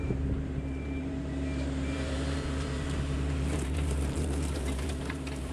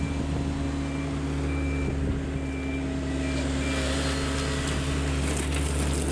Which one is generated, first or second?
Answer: first